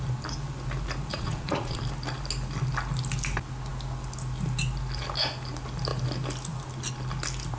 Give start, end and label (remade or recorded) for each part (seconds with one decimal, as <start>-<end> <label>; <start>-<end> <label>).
0.0-1.1 recorded; 1.1-1.8 remade; 1.8-7.6 recorded